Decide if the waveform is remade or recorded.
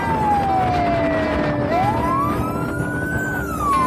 recorded